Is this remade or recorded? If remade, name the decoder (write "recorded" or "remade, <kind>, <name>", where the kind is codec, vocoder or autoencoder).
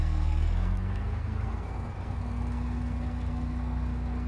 remade, codec, SNAC